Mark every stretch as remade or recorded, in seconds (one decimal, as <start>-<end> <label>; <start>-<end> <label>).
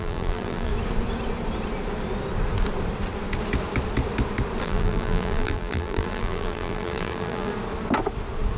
0.0-0.7 remade; 0.7-4.6 recorded; 4.6-7.5 remade; 7.5-8.6 recorded